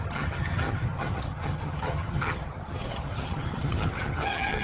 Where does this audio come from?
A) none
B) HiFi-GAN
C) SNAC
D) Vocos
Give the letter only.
B